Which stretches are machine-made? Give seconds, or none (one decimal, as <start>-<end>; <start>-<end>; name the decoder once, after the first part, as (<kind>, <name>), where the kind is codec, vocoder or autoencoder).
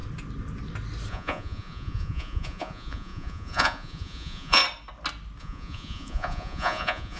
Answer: 1.1-4.6 (vocoder, Vocos); 5.4-7.2